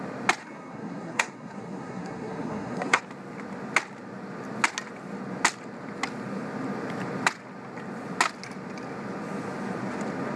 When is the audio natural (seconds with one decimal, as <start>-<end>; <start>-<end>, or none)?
0.0-0.4; 3.0-10.4